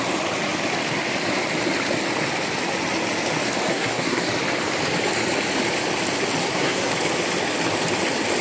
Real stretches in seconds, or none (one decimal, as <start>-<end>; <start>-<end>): 0.0-3.7; 4.2-6.4; 6.9-8.4